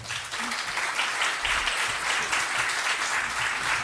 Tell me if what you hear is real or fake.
real